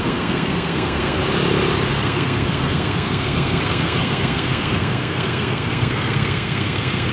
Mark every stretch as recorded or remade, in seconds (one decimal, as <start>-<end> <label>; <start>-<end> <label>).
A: 0.0-1.2 remade; 1.2-1.9 recorded; 1.9-7.1 remade